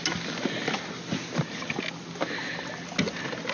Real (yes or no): yes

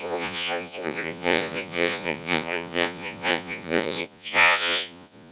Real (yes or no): no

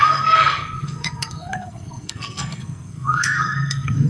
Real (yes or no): no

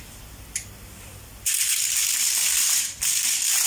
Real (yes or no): no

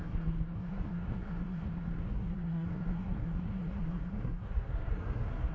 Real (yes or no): no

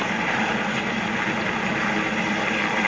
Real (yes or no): yes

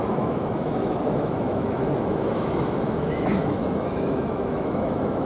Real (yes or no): no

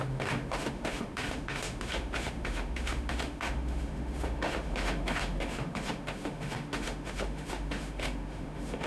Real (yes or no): no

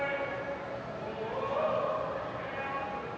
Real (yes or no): yes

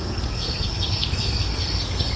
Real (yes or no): no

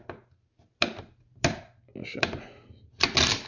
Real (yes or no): yes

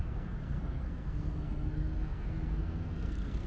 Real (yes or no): no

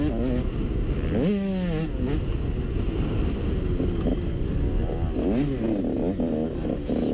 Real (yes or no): yes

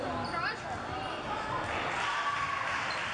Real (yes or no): yes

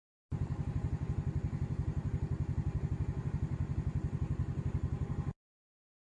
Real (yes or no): yes